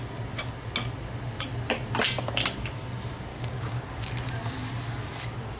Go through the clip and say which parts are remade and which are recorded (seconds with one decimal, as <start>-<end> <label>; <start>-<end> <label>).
0.0-3.3 recorded; 3.3-3.9 remade; 3.9-5.6 recorded